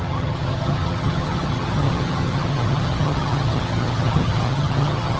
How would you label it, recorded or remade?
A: remade